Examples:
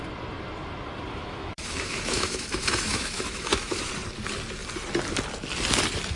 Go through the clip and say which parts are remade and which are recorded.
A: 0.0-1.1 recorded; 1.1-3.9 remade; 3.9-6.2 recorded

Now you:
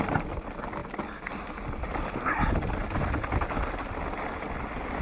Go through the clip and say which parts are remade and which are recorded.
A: 0.0-5.0 recorded

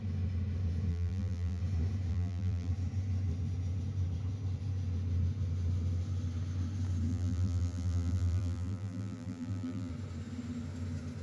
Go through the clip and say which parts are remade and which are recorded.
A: 0.0-0.9 recorded; 0.9-1.6 remade; 1.6-2.1 recorded; 2.1-2.7 remade; 2.7-7.1 recorded; 7.1-9.9 remade; 9.9-11.2 recorded

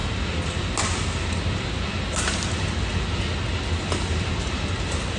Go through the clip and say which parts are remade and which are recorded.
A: 0.0-5.2 recorded

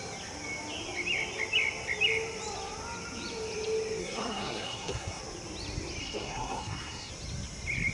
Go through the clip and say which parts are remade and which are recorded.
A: 0.0-4.0 recorded; 4.0-5.2 remade; 5.2-6.0 recorded; 6.0-7.1 remade; 7.1-7.9 recorded